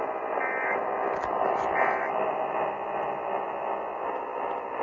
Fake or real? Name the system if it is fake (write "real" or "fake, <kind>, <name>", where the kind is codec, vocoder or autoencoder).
real